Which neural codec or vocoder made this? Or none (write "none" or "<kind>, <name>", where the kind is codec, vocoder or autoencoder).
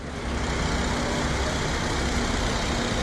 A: none